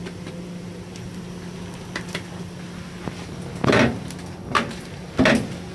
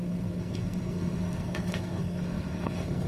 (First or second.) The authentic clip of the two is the first